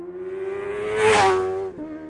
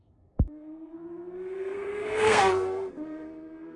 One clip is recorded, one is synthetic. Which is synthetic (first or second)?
second